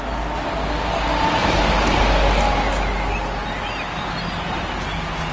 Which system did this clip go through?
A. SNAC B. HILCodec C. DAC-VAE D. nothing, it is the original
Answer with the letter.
D